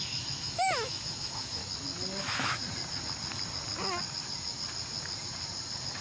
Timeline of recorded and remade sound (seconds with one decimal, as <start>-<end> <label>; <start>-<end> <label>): 0.0-1.6 remade; 1.6-2.2 recorded; 2.2-2.6 remade; 2.6-6.0 recorded